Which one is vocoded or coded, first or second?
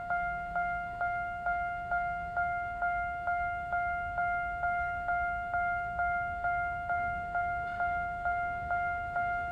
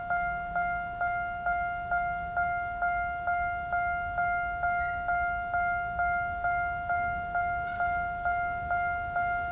first